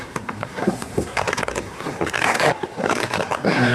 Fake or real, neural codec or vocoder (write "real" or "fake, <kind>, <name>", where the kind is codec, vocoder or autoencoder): fake, codec, SNAC